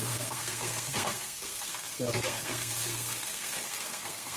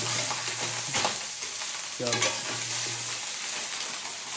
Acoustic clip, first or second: second